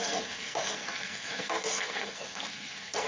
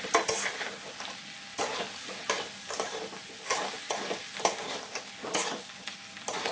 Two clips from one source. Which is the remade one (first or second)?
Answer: first